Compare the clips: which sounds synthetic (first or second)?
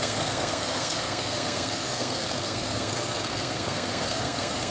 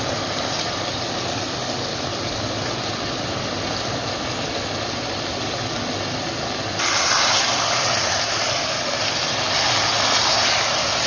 first